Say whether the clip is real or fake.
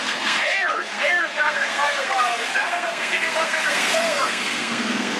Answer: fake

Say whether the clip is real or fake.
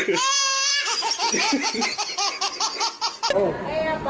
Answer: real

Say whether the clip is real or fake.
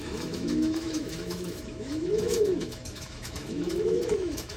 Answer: fake